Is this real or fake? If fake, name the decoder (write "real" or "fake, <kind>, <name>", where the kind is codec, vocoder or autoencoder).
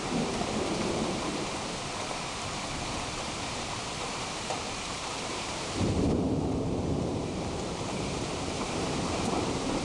fake, vocoder, BigVGAN v2